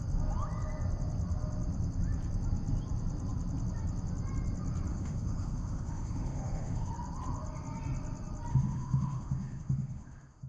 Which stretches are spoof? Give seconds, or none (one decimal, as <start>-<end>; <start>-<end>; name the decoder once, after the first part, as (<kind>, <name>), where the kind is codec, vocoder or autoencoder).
4.9-6.9 (autoencoder, DAC-VAE); 8.5-10.5